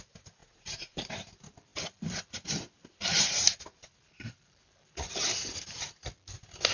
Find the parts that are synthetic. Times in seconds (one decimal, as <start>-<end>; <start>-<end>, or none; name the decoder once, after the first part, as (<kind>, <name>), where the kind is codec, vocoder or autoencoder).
0.4-1.0 (vocoder, Vocos)